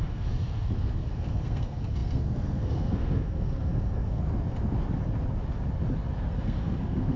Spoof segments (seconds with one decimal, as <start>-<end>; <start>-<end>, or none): 0.0-4.2; 6.3-7.2